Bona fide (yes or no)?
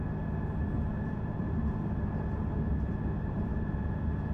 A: yes